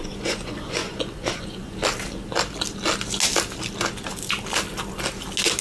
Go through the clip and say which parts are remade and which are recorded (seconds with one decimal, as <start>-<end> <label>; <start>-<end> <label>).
0.0-1.8 remade; 1.8-5.6 recorded